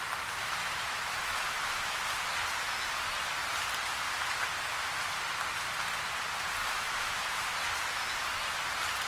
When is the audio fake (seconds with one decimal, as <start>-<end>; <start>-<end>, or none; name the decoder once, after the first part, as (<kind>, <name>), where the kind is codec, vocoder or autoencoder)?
0.4-2.0 (autoencoder, DAC-VAE); 6.6-7.4